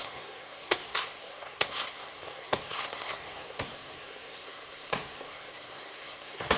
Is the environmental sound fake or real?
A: fake